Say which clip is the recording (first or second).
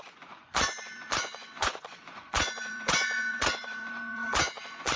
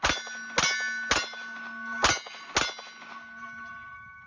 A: second